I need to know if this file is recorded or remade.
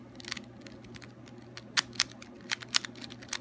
recorded